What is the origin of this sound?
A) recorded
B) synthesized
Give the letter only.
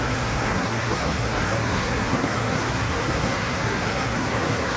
B